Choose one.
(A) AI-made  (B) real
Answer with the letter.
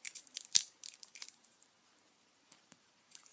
A